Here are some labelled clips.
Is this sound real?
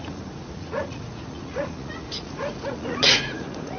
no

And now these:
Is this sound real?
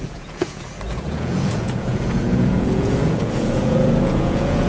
no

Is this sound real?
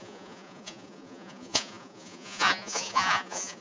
no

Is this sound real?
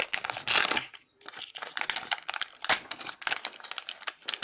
yes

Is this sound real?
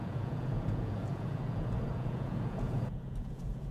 no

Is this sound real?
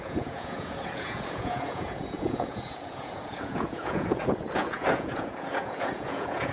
no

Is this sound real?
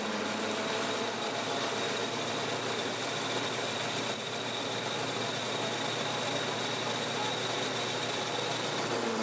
yes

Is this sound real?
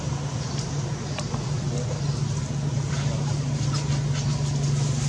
yes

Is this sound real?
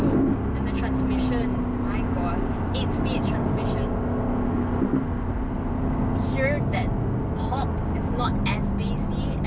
yes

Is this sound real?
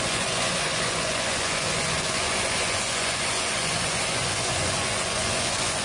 no